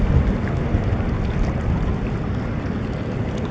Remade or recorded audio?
recorded